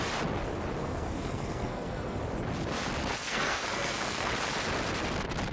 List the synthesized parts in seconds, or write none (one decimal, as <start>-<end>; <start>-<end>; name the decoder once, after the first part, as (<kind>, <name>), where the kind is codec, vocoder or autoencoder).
0.8-2.2 (codec, SNAC); 3.0-4.3